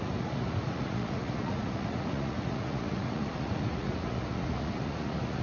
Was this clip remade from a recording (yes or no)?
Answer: yes